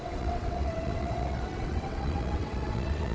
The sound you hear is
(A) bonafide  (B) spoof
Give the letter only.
B